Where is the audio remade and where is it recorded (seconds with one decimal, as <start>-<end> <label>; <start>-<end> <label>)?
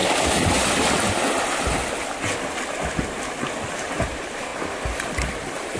0.0-3.5 recorded; 3.5-4.5 remade; 4.5-5.1 recorded; 5.1-5.8 remade